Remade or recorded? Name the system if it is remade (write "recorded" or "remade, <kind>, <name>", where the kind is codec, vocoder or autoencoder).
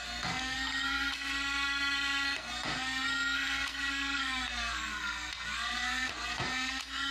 remade, codec, SNAC